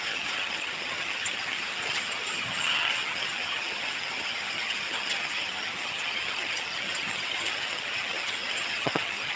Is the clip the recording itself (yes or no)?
no